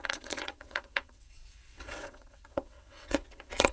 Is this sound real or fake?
fake